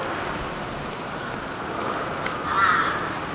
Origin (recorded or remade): recorded